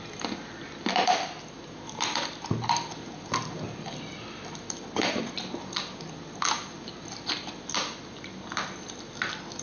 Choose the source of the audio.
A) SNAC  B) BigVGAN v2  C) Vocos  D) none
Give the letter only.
D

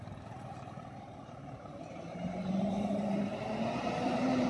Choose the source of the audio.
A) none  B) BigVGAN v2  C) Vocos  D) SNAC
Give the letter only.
B